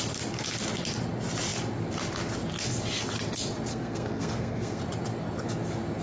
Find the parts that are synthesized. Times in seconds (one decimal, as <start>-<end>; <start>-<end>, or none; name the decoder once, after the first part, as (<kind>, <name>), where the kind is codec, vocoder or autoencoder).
3.7-4.8 (codec, SNAC)